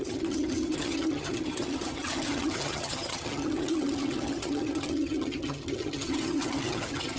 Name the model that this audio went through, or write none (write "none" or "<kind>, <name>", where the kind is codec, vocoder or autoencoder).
vocoder, HiFi-GAN